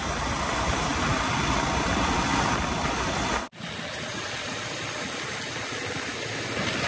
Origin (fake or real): real